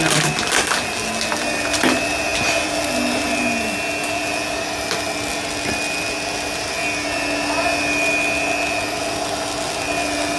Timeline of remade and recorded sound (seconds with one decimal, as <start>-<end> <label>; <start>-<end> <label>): 0.0-10.4 recorded